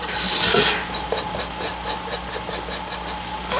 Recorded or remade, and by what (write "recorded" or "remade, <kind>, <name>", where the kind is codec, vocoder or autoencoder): recorded